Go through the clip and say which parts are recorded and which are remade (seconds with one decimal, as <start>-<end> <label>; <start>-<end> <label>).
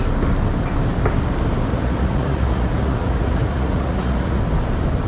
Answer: 0.0-1.7 recorded; 1.7-4.4 remade; 4.4-5.1 recorded